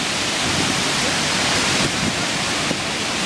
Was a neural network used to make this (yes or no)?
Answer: no